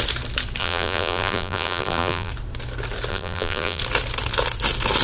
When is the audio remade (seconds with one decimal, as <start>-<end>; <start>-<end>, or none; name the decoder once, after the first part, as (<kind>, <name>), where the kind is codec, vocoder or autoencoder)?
0.6-2.3 (vocoder, BigVGAN v2); 3.1-3.8